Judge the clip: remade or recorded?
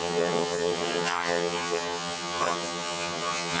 remade